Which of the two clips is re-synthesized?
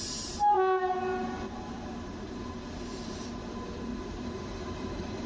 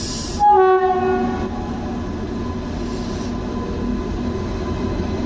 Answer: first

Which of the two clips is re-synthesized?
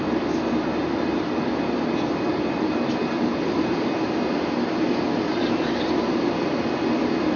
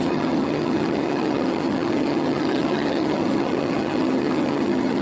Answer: second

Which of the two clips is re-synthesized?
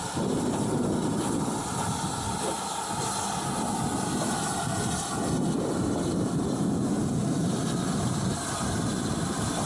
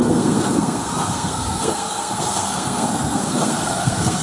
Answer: second